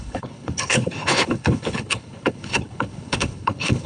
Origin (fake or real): fake